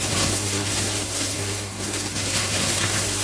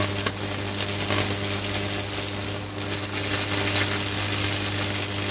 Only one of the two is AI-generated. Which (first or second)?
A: first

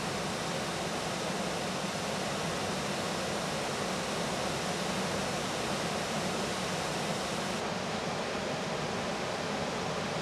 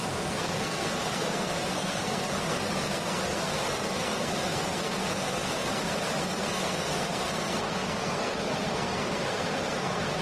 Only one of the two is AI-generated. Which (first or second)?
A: second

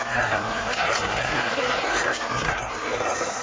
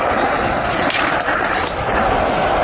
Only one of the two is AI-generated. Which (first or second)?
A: first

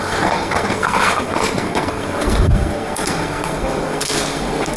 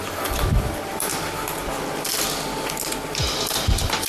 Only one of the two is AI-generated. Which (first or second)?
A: first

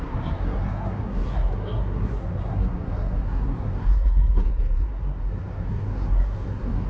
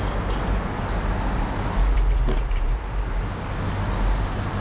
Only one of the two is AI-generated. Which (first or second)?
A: first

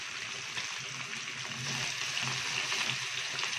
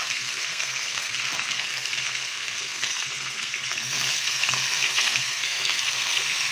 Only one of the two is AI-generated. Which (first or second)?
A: second